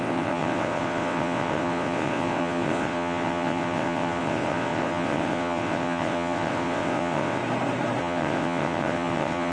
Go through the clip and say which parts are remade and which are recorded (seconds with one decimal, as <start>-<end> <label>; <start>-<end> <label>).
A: 0.0-7.4 remade; 7.4-8.0 recorded; 8.0-9.5 remade